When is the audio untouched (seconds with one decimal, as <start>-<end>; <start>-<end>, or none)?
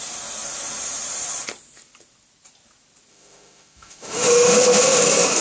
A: 0.0-3.1; 5.0-5.4